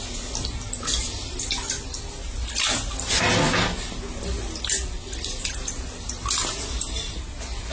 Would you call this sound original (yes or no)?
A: yes